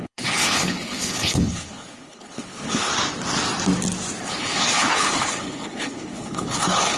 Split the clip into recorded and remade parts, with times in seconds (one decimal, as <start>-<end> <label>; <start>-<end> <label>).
0.0-2.9 remade; 2.9-4.2 recorded; 4.2-7.0 remade